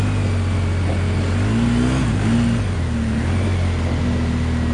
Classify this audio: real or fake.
real